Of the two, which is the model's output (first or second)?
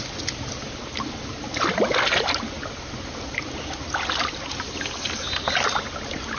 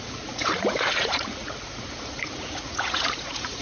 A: second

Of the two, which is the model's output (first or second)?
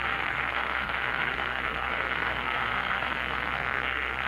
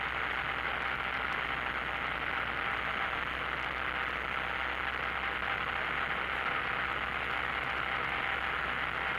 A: first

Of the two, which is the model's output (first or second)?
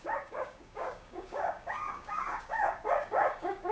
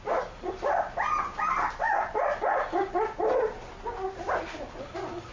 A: first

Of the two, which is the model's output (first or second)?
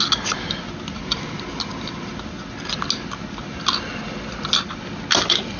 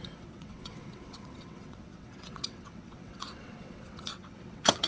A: second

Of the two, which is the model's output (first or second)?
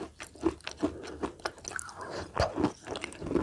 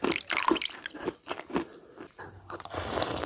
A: second